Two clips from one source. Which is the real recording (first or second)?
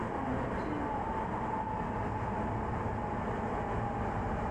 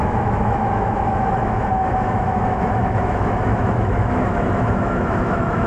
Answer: first